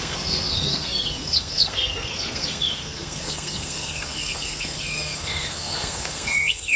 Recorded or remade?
remade